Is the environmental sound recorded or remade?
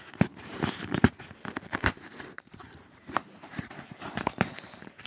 remade